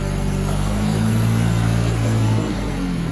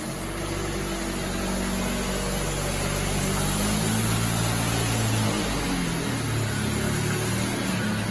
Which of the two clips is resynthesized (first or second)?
first